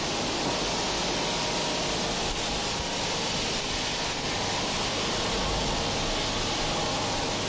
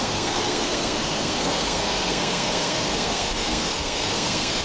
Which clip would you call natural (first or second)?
first